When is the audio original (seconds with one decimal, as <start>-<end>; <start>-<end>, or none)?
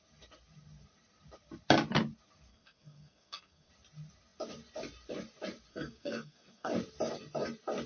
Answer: 0.0-2.5; 3.7-5.7; 6.7-7.9